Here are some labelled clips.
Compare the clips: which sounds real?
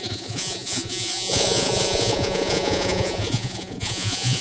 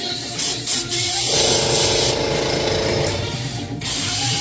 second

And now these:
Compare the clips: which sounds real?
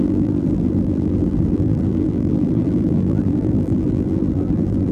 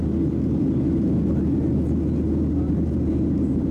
second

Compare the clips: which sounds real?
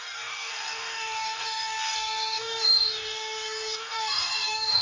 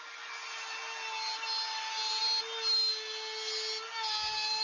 second